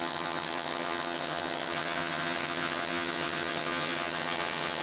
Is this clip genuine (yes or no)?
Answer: no